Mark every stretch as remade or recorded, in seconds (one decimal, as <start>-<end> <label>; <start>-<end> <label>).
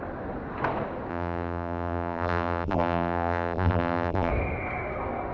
0.0-1.1 recorded; 1.1-4.3 remade; 4.3-5.3 recorded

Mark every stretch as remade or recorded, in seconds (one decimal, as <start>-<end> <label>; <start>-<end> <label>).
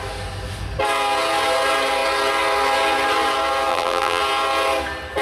0.0-3.7 recorded; 3.7-4.2 remade; 4.2-5.2 recorded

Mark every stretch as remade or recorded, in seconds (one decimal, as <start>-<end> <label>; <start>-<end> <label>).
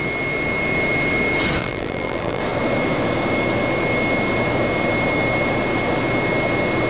0.0-1.6 recorded; 1.6-2.4 remade; 2.4-6.9 recorded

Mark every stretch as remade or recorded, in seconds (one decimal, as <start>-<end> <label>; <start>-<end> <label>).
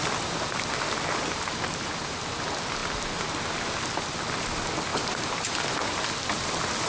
0.0-4.9 recorded; 4.9-6.0 remade; 6.0-6.9 recorded